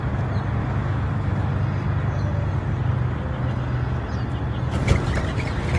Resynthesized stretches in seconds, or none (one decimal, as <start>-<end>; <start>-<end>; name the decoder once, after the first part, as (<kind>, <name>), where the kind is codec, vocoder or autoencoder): 0.6-1.5 (autoencoder, DAC-VAE)